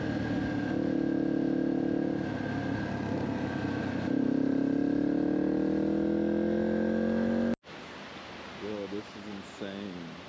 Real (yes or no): yes